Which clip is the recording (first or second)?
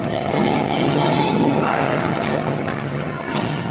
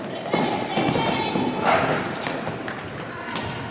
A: second